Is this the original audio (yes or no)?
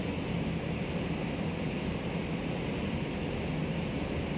yes